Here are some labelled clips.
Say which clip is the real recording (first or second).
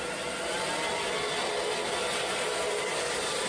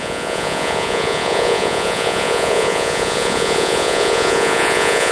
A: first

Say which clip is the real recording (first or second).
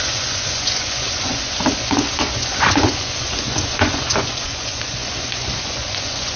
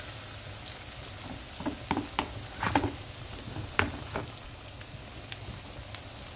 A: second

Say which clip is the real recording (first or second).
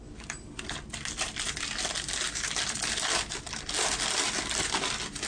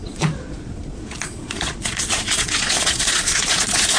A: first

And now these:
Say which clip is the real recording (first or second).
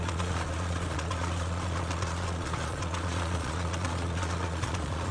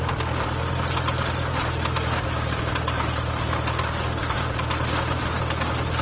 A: second